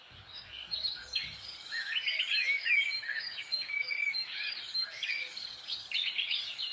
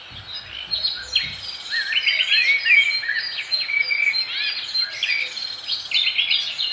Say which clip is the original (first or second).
second